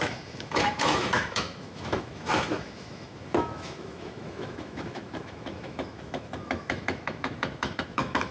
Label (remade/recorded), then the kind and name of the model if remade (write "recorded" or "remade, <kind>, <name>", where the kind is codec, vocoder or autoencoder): remade, autoencoder, DAC-VAE